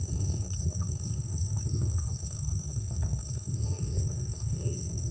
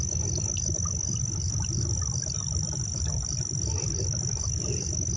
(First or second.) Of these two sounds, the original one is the second